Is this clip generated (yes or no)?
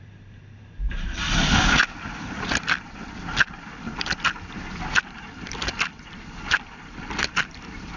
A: yes